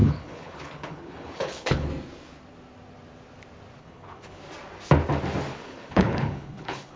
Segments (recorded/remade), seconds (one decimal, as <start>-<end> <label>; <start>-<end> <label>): 0.0-1.9 remade; 1.9-3.8 recorded; 3.8-4.4 remade; 4.4-5.5 recorded; 5.5-7.0 remade